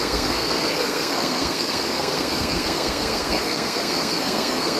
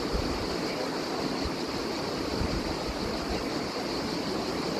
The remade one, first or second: first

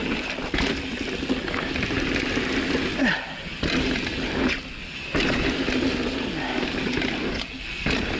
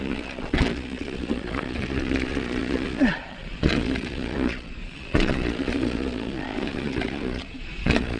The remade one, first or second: second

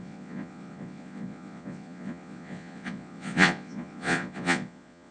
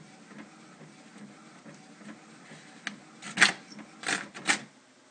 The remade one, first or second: first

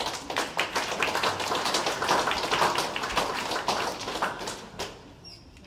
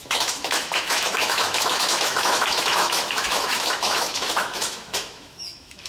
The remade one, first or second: second